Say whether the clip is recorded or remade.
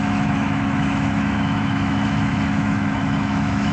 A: remade